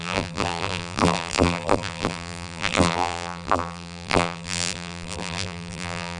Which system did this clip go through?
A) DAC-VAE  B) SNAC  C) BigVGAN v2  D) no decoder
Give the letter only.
C